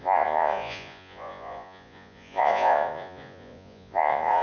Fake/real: fake